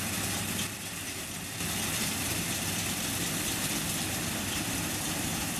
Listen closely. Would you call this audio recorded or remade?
remade